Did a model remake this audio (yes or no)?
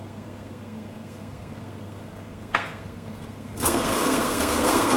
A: yes